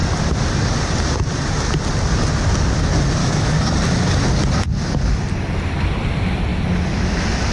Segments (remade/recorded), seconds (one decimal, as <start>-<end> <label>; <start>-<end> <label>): 0.0-3.2 recorded; 3.2-3.7 remade; 3.7-7.5 recorded